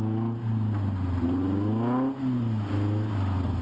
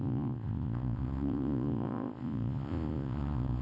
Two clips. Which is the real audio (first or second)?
first